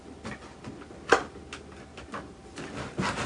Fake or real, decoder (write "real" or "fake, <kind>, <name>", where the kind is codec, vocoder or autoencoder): real